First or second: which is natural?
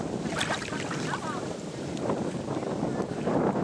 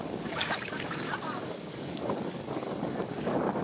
first